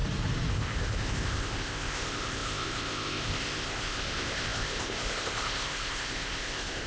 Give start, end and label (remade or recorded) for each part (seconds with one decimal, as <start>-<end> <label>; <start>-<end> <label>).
0.0-0.5 recorded; 0.5-6.9 remade